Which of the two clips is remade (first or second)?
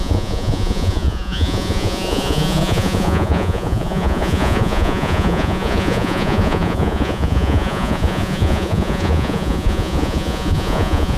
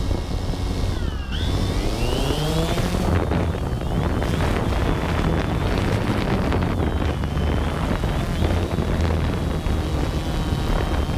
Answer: first